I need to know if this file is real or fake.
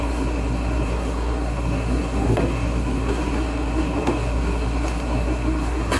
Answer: fake